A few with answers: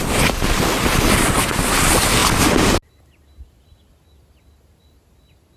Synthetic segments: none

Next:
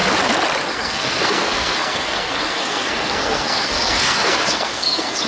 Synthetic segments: 0.7-5.3 (codec, SNAC)

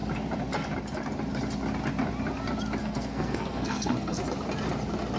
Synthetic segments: 2.8-4.2 (codec, SNAC)

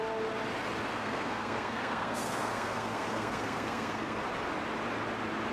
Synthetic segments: 0.9-4.2 (codec, SNAC)